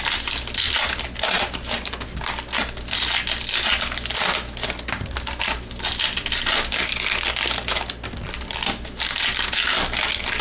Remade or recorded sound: recorded